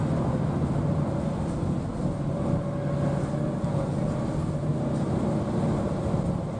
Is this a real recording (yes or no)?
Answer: yes